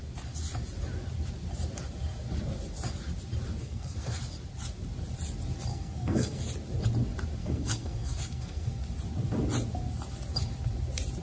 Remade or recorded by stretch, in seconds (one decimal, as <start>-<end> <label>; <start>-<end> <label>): 0.0-3.6 recorded; 3.6-4.2 remade; 4.2-5.7 recorded; 5.7-6.5 remade; 6.5-7.4 recorded; 7.4-8.8 remade; 8.8-11.2 recorded